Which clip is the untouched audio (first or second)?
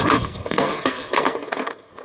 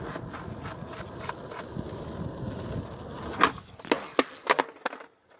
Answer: second